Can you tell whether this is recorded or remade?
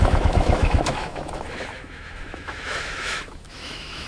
remade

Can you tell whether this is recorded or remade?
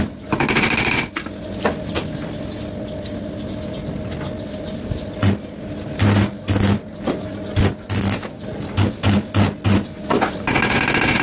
recorded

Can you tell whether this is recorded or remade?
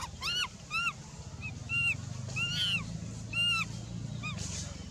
recorded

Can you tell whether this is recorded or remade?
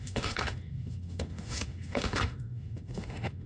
remade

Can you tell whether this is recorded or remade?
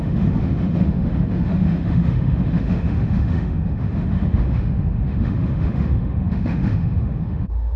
remade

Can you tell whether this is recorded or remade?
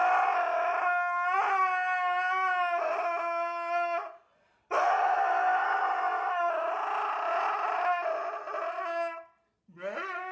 recorded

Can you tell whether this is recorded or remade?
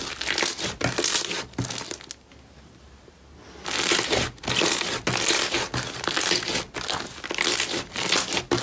recorded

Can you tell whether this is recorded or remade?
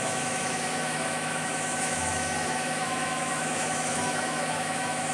remade